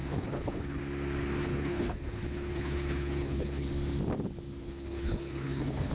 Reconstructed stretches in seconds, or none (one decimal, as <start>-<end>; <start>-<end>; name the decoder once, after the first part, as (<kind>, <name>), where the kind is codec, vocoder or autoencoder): 0.0-0.8 (codec, HILCodec); 1.5-3.7; 4.6-5.9